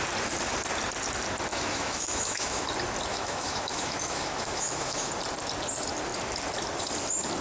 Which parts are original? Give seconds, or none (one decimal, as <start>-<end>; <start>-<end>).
0.0-1.5; 2.6-3.1; 5.1-7.4